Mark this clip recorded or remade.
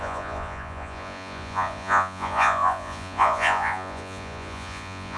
remade